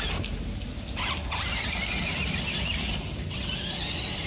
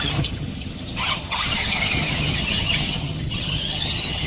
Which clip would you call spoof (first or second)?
second